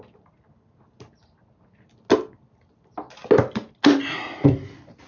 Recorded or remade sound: recorded